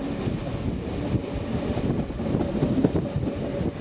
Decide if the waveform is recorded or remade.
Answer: recorded